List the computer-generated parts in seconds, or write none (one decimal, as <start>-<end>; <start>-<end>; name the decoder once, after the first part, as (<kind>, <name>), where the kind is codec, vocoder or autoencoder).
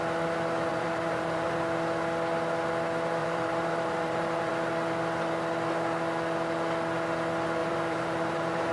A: 0.7-1.6 (vocoder, BigVGAN v2); 3.2-4.5; 7.6-8.7